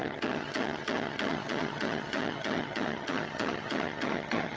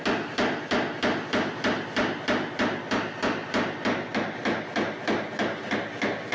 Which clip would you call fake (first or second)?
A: first